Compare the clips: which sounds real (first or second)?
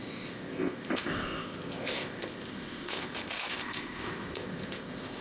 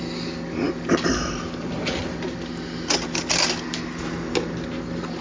second